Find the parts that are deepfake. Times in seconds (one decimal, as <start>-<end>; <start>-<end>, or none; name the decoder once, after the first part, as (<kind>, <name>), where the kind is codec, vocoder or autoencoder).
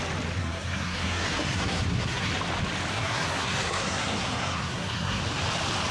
0.4-2.3 (codec, SNAC); 2.9-5.2